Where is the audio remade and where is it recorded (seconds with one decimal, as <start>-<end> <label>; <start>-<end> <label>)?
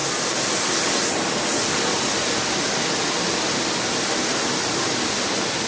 0.0-5.7 recorded